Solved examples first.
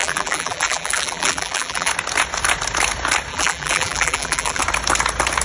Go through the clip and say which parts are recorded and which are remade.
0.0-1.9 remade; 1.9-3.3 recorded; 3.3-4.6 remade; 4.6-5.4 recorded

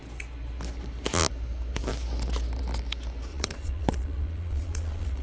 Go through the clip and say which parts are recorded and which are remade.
0.0-3.3 recorded; 3.3-5.2 remade

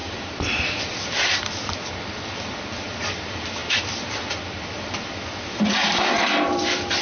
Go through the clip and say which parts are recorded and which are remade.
0.0-0.8 remade; 0.8-3.6 recorded; 3.6-4.3 remade; 4.3-5.8 recorded; 5.8-7.0 remade

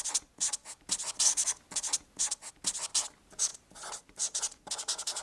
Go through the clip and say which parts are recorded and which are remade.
0.0-3.5 recorded; 3.5-4.7 remade; 4.7-5.2 recorded

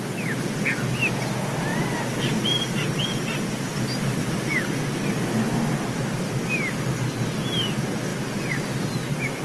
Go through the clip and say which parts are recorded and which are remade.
0.0-9.4 recorded